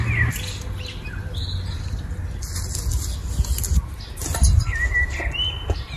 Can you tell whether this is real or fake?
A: real